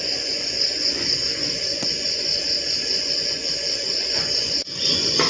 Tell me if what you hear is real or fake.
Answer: fake